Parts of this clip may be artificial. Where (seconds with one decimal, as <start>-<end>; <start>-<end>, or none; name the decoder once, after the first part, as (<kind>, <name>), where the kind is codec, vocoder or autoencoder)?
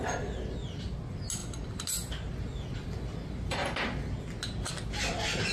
none